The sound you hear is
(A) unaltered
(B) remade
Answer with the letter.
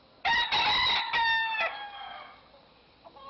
A